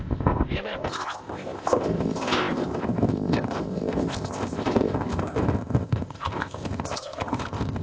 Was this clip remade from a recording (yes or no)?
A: yes